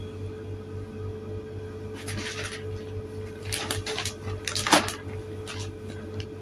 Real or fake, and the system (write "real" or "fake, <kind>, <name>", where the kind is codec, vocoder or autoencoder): real